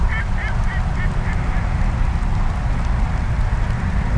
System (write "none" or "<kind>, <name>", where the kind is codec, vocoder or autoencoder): none